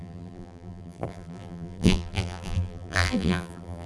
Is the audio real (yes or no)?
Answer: no